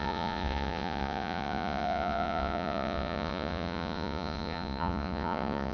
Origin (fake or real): fake